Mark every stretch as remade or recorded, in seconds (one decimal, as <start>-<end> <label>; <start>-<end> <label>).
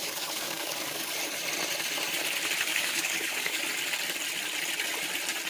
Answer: 0.0-1.1 remade; 1.1-2.7 recorded; 2.7-3.6 remade; 3.6-5.5 recorded